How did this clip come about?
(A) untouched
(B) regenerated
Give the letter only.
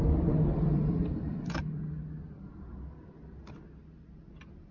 A